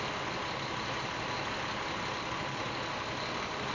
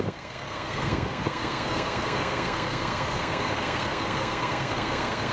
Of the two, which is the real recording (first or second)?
first